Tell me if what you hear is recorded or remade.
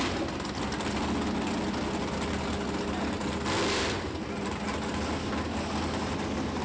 recorded